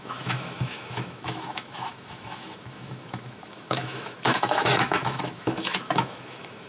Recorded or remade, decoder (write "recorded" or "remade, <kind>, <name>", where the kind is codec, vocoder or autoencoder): remade, autoencoder, DAC-VAE